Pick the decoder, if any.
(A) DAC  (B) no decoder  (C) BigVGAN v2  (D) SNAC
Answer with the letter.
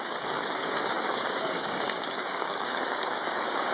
A